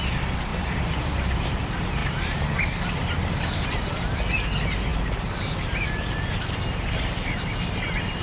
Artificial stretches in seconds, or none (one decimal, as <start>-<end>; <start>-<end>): 0.5-1.2; 4.9-6.0

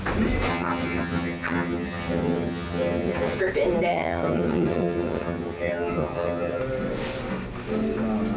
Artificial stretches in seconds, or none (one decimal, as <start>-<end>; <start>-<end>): 0.5-3.4; 3.9-6.6

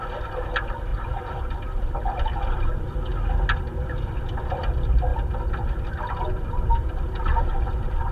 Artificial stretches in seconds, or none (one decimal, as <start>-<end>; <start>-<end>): 0.0-3.1; 3.9-5.1; 7.4-8.1

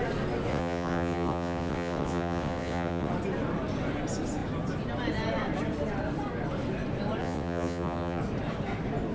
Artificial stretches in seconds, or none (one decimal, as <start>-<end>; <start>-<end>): 0.5-3.1; 7.2-8.2